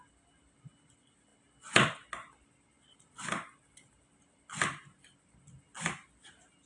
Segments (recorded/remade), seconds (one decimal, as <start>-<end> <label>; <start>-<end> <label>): 0.0-6.7 recorded